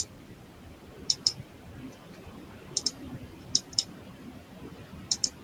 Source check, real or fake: fake